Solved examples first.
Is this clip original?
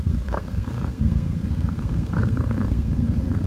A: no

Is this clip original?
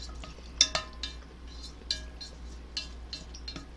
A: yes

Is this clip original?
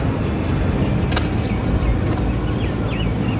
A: yes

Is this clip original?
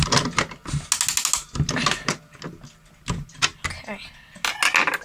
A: yes